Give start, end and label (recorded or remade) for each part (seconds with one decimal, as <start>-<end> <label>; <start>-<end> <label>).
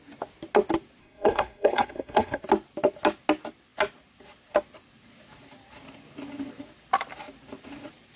0.0-1.0 recorded; 1.0-2.4 remade; 2.4-8.2 recorded